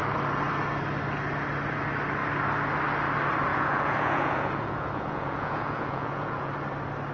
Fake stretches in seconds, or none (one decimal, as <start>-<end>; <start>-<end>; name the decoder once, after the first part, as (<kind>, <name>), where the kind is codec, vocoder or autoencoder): 3.5-6.5 (vocoder, Vocos)